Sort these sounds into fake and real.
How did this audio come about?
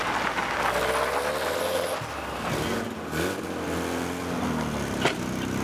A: real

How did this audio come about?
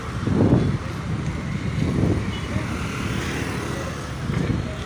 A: real